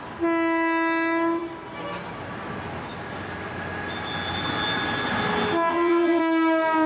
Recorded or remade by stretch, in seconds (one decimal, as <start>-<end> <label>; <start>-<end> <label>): 0.0-5.7 recorded; 5.7-6.2 remade; 6.2-6.9 recorded